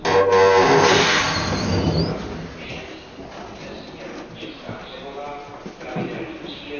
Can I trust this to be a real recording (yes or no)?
yes